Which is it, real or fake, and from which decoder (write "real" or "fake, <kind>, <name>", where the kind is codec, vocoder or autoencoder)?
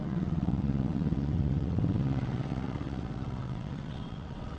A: fake, vocoder, WaveNeXt